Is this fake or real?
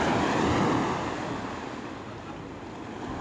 real